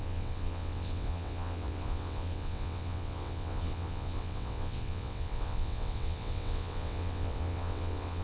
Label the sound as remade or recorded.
remade